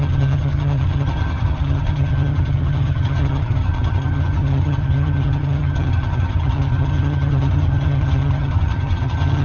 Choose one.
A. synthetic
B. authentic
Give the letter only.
A